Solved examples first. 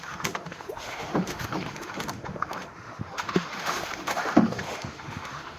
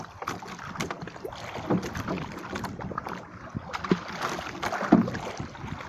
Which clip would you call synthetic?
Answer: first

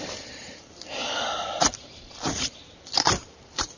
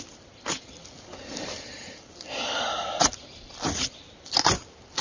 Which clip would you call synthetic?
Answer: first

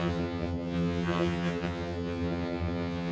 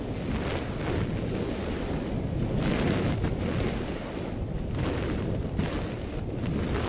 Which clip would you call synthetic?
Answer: first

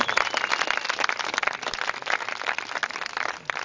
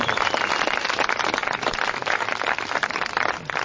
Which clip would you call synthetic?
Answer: second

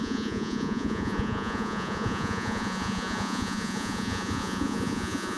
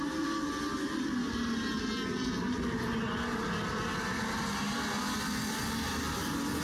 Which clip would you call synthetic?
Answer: first